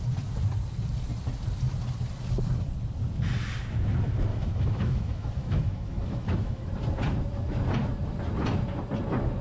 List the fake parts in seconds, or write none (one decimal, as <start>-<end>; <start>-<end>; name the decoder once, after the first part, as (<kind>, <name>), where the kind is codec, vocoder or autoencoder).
4.3-6.7 (autoencoder, DAC-VAE)